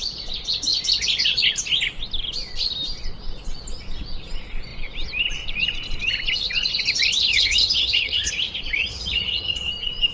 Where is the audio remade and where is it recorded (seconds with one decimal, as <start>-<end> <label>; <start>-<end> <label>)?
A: 0.0-7.3 recorded; 7.3-8.3 remade; 8.3-8.8 recorded; 8.8-9.7 remade; 9.7-10.1 recorded